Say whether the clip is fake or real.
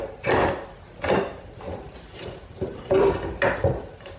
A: real